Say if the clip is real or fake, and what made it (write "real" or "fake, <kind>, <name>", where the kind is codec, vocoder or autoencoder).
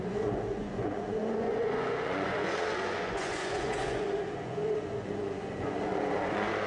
fake, vocoder, Vocos